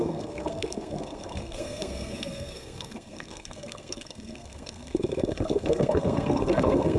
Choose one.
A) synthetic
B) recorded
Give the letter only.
A